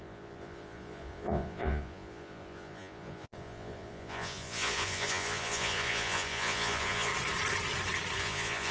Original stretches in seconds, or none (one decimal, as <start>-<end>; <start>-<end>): 7.1-8.2